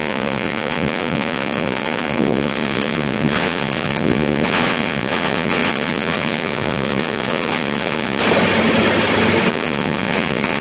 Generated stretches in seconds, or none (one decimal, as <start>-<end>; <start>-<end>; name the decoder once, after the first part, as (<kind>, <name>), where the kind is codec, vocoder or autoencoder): 0.0-8.2 (vocoder, Vocos); 9.5-10.6